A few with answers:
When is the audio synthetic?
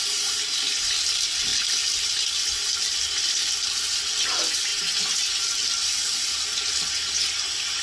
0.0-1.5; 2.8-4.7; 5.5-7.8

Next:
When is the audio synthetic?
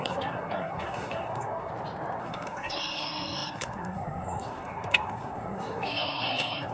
0.0-1.7; 2.2-6.7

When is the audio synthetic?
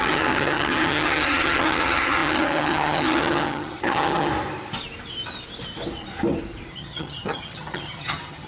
0.0-4.3; 6.7-8.5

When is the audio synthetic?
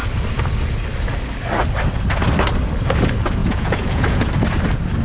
3.4-4.3